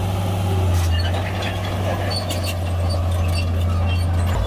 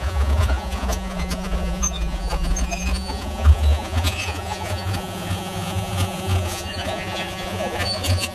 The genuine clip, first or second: first